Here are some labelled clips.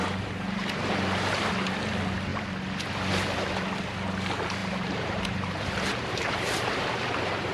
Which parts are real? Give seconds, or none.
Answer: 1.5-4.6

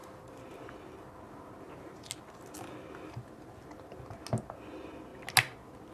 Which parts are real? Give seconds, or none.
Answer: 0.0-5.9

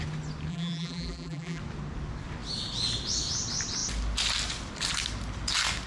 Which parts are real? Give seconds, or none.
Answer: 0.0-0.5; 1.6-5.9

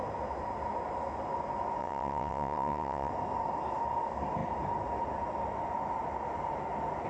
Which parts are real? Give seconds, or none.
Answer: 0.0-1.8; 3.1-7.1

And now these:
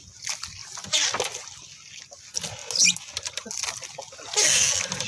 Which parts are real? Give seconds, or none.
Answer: 0.0-5.1